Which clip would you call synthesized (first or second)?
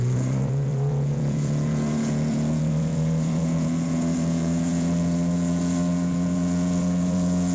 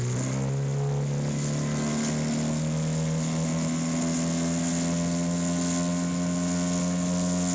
first